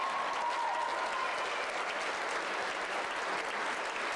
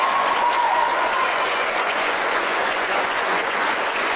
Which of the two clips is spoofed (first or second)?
second